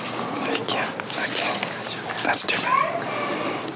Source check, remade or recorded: recorded